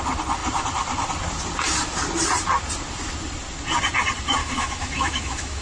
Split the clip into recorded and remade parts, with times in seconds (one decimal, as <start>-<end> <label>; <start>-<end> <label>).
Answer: 0.0-4.4 recorded; 4.4-5.6 remade